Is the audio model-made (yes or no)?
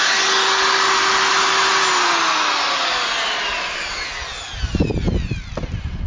no